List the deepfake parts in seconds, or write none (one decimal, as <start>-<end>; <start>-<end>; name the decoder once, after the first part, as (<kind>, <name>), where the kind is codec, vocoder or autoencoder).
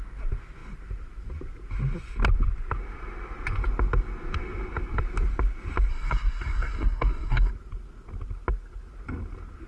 5.9-7.5 (codec, SNAC)